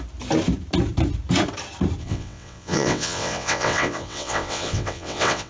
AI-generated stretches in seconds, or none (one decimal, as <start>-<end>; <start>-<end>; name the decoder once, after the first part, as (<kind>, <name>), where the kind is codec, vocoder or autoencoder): 2.0-5.5 (vocoder, WaveNeXt)